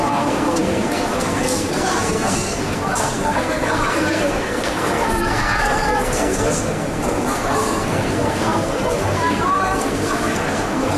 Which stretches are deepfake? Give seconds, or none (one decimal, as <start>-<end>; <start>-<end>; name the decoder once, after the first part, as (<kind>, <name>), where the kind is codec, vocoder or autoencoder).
0.0-11.0 (codec, SNAC)